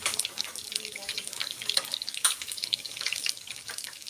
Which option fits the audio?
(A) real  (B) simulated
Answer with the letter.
B